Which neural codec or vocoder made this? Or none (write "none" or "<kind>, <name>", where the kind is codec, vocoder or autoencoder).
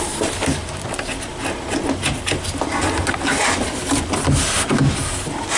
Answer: none